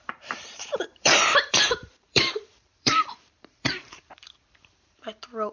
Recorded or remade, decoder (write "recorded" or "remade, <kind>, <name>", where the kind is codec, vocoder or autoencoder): remade, vocoder, BigVGAN v2